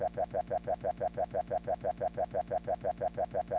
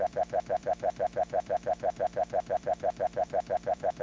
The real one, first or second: first